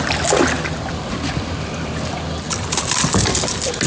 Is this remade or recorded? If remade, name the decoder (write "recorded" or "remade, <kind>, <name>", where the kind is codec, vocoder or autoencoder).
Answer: recorded